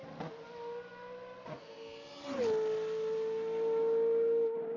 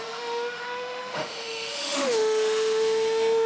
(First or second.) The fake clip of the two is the second